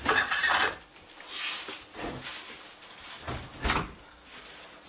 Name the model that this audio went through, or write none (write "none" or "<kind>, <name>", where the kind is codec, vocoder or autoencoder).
none